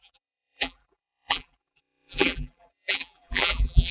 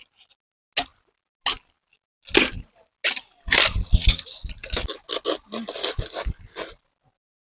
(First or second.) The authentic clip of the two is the second